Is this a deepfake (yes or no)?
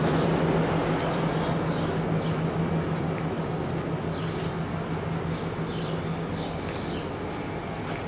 no